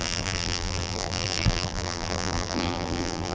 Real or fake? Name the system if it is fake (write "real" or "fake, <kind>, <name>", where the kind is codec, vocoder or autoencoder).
fake, vocoder, BigVGAN v2